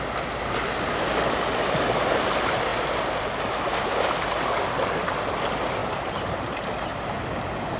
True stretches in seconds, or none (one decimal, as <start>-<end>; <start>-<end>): 0.0-7.8